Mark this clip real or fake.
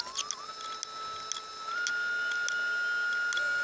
real